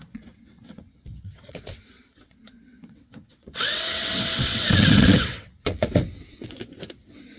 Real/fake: fake